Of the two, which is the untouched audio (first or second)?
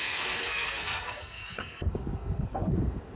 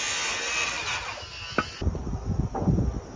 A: second